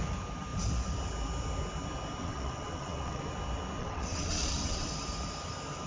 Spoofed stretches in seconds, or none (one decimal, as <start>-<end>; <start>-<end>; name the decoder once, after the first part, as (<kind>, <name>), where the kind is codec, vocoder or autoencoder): 2.2-3.2 (vocoder, WaveNeXt); 3.8-4.9